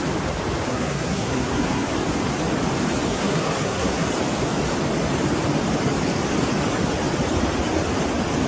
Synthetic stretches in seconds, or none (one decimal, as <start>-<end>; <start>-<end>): 0.7-1.9; 3.1-4.1